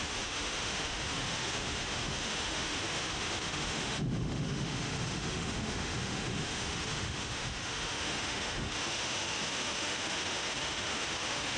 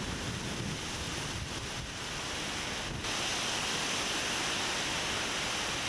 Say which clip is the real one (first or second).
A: second